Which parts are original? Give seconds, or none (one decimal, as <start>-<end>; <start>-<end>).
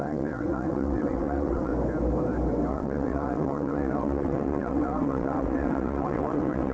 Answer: 1.7-2.7